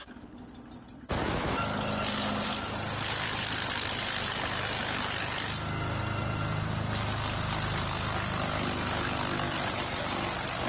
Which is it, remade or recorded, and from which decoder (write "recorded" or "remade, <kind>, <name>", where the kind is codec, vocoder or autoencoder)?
recorded